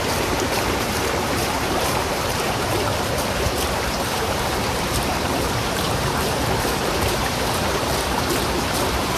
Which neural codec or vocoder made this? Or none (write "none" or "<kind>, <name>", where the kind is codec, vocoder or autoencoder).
vocoder, BigVGAN v2